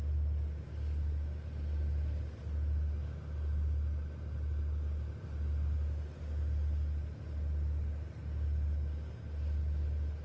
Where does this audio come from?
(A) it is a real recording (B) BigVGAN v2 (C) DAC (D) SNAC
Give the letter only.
A